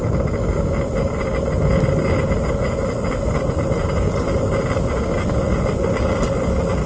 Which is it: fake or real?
real